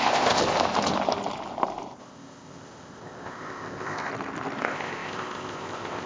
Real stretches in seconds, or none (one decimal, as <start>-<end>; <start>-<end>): 0.4-2.0; 4.1-4.6